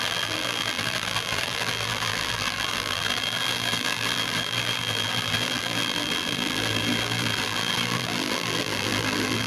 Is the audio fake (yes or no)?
yes